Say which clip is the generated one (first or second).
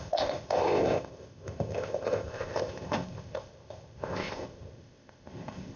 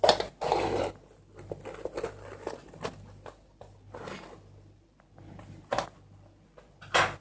first